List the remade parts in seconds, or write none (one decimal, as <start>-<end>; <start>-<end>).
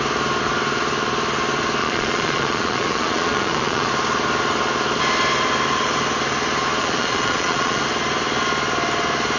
1.8-3.9; 6.8-7.8